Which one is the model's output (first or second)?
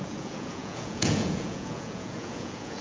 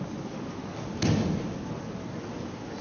first